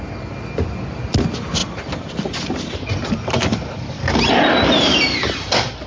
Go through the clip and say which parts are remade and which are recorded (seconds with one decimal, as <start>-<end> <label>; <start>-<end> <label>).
0.0-5.9 recorded